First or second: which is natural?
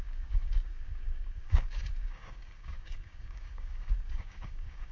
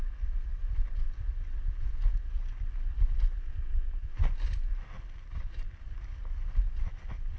second